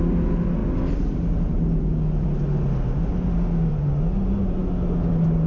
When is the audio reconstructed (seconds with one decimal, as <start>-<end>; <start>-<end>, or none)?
none